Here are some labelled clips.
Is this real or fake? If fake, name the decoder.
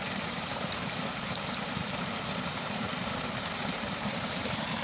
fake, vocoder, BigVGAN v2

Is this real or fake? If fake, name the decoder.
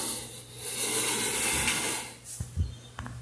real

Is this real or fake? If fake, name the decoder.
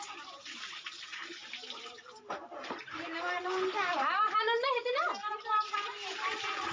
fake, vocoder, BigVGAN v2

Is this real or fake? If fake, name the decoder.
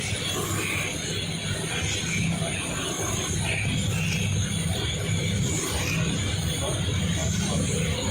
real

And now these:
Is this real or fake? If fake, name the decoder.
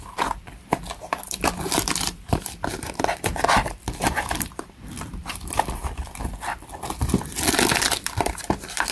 fake, vocoder, BigVGAN v2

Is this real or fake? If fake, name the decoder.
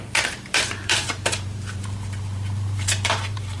fake, vocoder, BigVGAN v2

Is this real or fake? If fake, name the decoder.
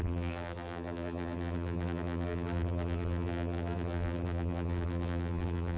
fake, vocoder, BigVGAN v2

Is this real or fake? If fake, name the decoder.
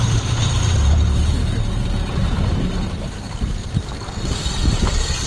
fake, vocoder, BigVGAN v2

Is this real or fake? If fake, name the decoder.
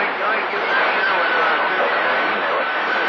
real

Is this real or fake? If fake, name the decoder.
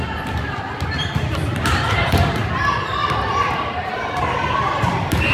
fake, vocoder, BigVGAN v2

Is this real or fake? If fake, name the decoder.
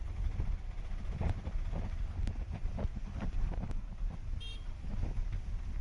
real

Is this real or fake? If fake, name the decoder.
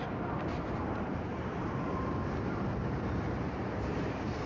fake, vocoder, BigVGAN v2